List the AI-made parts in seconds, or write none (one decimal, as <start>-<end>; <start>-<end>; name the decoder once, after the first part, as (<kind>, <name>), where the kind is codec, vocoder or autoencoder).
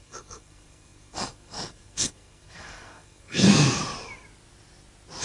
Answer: 0.0-3.8 (codec, SNAC)